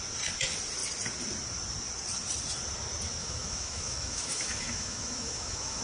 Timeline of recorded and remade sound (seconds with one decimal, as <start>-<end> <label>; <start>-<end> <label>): 0.0-3.2 recorded; 3.2-5.8 remade